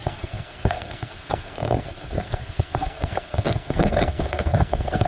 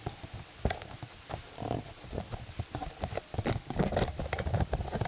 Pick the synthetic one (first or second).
first